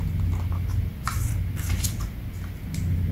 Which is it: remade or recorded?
recorded